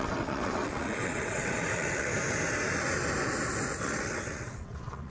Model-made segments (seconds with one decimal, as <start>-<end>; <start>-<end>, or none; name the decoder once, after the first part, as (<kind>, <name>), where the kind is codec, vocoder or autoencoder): 0.0-2.1 (vocoder, WaveNeXt); 3.8-5.1